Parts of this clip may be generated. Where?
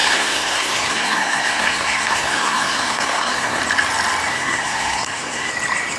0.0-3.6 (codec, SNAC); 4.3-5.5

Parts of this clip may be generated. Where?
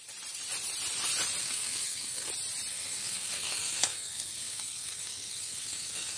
1.4-2.3 (codec, SNAC); 2.7-6.2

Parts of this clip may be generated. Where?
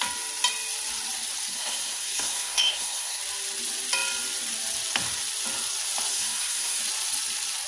1.5-3.2 (codec, SNAC); 6.1-6.8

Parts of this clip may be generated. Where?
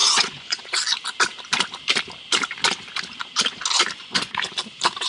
0.0-0.7 (vocoder, Vocos); 4.0-4.5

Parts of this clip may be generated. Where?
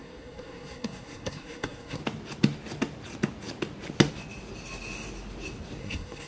0.0-2.0 (codec, SNAC); 5.8-6.3